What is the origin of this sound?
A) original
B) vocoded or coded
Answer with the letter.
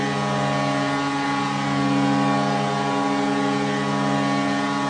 A